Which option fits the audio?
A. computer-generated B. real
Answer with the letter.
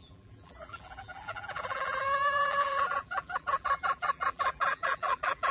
A